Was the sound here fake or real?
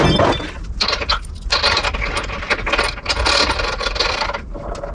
real